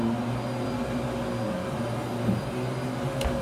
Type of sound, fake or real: real